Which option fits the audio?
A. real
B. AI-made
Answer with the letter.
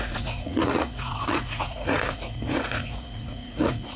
B